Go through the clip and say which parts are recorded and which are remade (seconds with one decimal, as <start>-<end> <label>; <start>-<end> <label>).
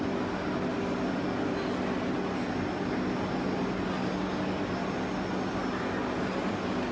0.0-6.9 recorded